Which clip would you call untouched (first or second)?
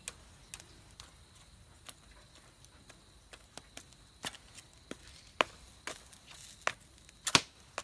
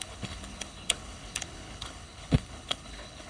first